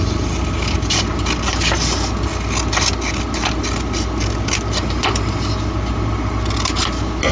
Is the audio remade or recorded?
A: recorded